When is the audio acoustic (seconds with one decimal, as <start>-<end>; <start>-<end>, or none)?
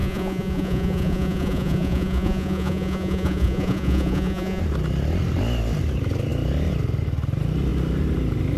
4.6-8.6